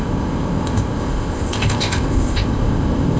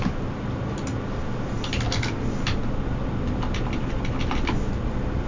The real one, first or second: second